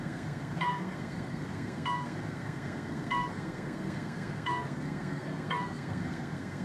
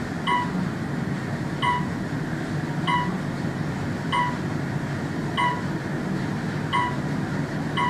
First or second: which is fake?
first